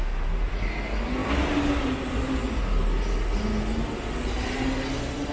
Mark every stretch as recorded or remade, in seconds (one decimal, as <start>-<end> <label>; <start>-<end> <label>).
0.0-5.3 recorded